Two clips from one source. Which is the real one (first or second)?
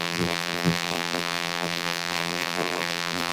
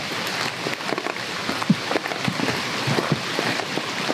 second